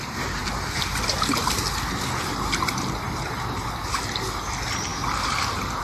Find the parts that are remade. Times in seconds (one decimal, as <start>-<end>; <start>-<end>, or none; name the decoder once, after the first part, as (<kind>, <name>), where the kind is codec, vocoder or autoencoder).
none